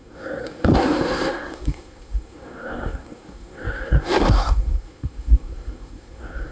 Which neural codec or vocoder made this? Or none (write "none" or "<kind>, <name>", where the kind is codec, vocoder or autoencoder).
codec, SNAC